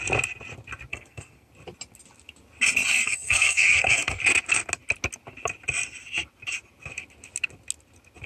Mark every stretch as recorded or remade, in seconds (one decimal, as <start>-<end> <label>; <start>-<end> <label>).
0.0-0.9 recorded; 0.9-1.5 remade; 1.5-2.9 recorded; 2.9-4.2 remade; 4.2-8.3 recorded